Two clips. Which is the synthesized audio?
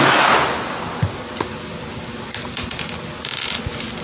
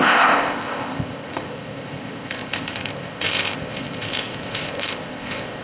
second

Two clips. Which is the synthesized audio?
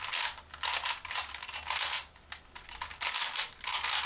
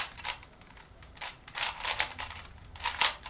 second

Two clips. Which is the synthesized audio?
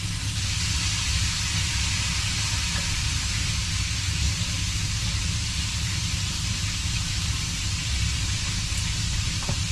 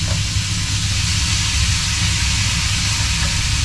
first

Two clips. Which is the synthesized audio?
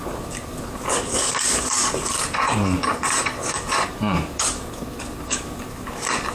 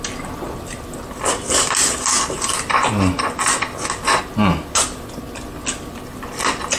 first